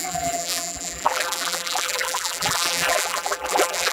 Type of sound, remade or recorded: remade